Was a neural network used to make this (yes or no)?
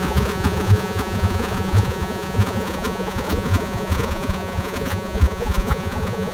yes